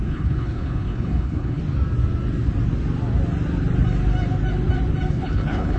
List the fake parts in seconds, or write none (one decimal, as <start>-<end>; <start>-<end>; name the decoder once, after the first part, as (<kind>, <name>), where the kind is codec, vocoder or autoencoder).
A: 0.0-1.6 (codec, HILCodec); 5.1-5.8